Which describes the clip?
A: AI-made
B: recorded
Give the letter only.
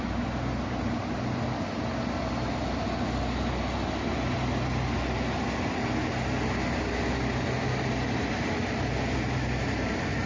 B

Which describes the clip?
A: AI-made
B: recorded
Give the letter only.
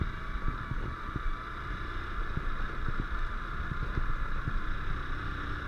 B